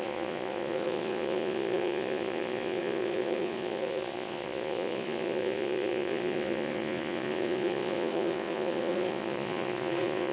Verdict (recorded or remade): remade